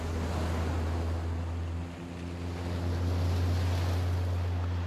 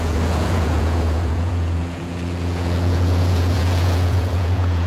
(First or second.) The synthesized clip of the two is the second